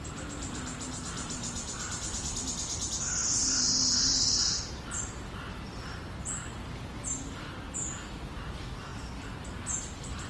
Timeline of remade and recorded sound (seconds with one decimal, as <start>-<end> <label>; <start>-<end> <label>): 0.0-10.3 recorded

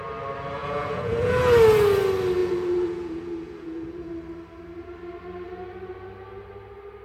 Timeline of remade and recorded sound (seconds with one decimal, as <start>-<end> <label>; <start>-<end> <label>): 0.0-0.6 recorded; 0.6-1.4 remade; 1.4-2.4 recorded; 2.4-4.1 remade; 4.1-7.0 recorded

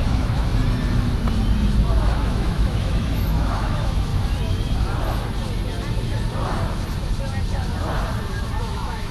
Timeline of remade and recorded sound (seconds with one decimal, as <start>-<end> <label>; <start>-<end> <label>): 0.0-0.5 remade; 0.5-2.0 recorded; 2.0-4.1 remade; 4.1-8.6 recorded; 8.6-9.1 remade

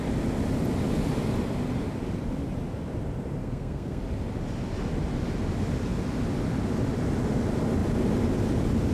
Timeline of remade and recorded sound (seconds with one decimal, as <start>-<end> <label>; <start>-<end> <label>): 0.0-3.4 recorded; 3.4-4.0 remade; 4.0-8.9 recorded

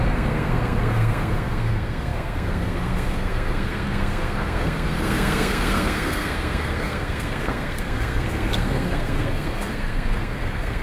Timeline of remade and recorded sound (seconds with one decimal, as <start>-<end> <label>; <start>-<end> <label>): 0.0-10.8 remade